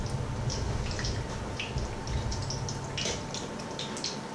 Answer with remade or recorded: recorded